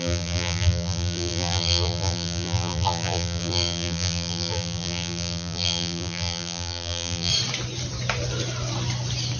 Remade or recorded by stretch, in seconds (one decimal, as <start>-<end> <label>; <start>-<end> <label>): 0.0-7.3 remade; 7.3-9.4 recorded